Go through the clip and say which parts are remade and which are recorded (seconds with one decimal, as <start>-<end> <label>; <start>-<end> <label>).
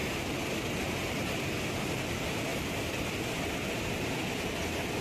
0.0-5.0 recorded